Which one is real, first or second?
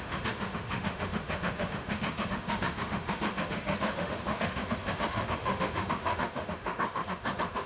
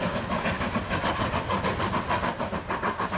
second